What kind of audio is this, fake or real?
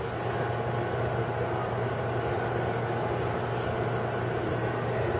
real